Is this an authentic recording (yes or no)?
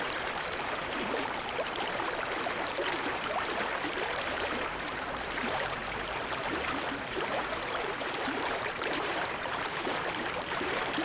no